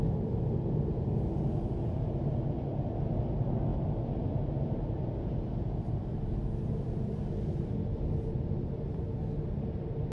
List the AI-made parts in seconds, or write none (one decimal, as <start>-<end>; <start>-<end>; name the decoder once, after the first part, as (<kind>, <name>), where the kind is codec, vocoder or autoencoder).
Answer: none